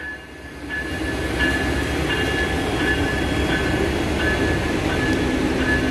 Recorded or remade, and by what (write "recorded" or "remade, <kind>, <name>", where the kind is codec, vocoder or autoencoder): recorded